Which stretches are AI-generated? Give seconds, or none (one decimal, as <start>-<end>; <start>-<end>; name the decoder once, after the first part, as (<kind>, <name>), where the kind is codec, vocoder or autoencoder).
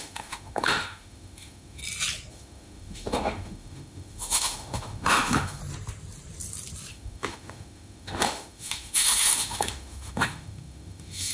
0.0-1.8 (autoencoder, DAC-VAE); 2.3-5.6; 6.9-11.3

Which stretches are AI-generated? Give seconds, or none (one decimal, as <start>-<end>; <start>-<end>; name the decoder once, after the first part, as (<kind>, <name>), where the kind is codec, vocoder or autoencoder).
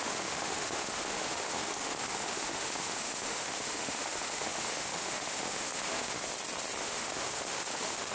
0.0-6.3 (autoencoder, DAC-VAE); 6.8-8.1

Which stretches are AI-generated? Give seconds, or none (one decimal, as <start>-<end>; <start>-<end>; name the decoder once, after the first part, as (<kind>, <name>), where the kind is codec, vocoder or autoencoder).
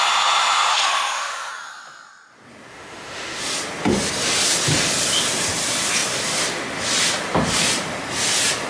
0.7-1.5 (autoencoder, DAC-VAE); 2.7-3.4